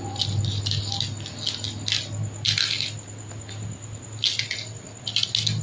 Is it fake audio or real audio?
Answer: real